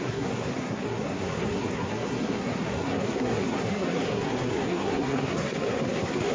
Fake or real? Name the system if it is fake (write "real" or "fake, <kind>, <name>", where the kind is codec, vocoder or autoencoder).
fake, codec, SNAC